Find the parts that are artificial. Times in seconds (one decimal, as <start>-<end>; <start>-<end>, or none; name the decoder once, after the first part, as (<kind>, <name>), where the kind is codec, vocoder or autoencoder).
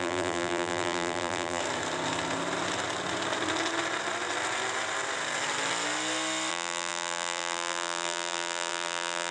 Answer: 0.0-1.6 (vocoder, BigVGAN v2); 6.5-9.3